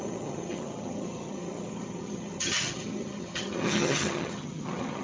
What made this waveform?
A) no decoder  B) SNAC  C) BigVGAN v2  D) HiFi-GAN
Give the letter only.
D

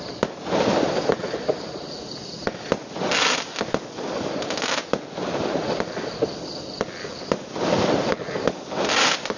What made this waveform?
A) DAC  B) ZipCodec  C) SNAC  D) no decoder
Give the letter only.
D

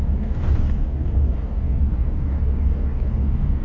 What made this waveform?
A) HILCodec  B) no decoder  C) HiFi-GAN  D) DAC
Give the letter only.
D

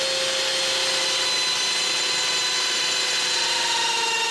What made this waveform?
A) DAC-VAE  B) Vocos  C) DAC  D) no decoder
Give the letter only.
D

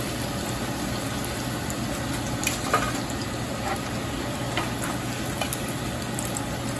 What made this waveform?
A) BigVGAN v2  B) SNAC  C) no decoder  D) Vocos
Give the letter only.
C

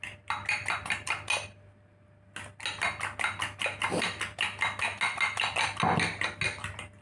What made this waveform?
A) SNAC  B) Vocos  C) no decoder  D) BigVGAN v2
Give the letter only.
C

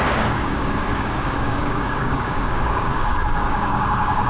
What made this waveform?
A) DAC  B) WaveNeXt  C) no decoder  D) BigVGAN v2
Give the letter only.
A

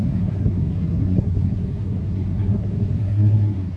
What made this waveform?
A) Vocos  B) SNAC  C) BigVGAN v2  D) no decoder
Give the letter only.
B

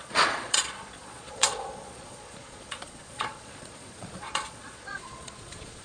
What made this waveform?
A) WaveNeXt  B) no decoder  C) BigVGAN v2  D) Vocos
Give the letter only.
D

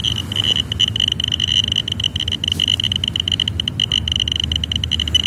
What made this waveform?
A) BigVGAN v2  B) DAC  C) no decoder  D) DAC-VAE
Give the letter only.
C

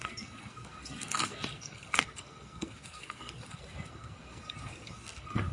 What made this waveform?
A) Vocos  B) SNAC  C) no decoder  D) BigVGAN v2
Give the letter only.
B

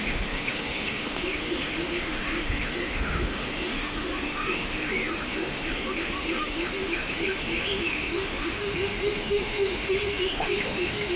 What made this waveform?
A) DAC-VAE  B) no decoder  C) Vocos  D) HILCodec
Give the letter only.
A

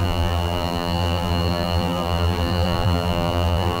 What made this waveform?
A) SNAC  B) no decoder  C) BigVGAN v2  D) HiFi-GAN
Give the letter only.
C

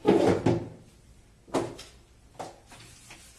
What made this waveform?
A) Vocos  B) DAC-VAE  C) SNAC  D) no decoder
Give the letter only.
D